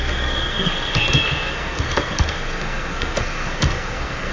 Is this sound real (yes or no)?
no